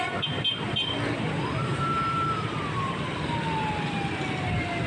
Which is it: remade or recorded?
recorded